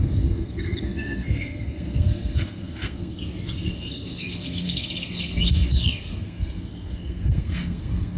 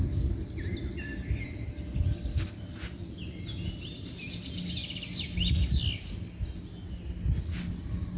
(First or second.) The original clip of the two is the second